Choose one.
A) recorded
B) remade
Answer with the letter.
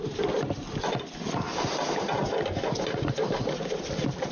A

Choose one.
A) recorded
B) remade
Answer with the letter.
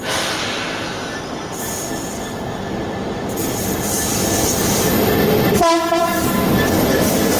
A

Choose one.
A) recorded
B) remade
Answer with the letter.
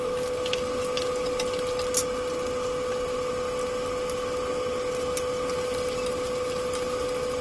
A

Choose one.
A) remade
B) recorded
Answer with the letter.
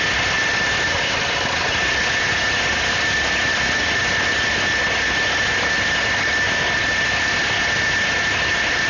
B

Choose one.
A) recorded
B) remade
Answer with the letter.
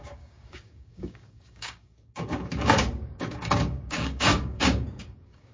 B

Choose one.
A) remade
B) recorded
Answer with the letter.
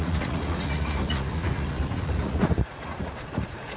A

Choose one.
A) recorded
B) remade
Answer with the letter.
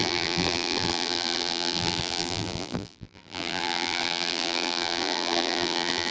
B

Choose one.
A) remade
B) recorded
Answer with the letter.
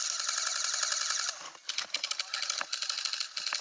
A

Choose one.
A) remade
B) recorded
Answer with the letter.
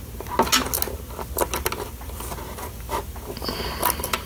B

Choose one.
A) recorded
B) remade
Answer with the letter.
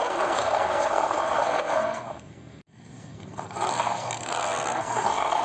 B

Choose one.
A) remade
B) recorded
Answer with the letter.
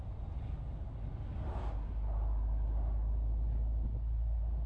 B